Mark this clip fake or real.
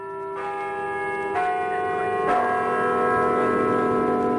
real